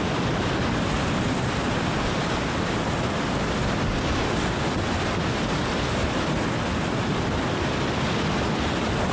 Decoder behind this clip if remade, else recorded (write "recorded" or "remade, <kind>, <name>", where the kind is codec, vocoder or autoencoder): recorded